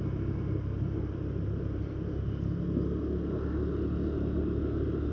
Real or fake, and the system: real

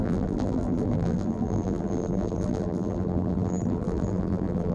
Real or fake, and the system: fake, vocoder, BigVGAN v2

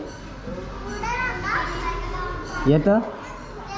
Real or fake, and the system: real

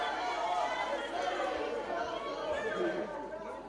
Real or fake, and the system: real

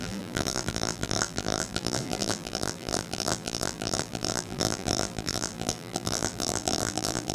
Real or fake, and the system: fake, vocoder, BigVGAN v2